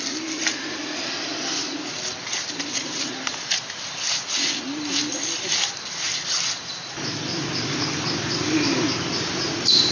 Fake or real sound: fake